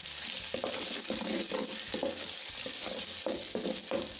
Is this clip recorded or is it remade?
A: recorded